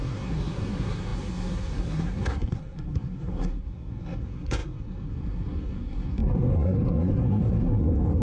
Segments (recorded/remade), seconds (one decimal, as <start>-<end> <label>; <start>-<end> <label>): 0.0-8.2 remade